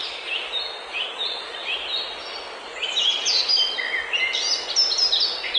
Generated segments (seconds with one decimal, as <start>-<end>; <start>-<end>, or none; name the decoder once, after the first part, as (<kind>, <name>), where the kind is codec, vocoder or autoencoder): none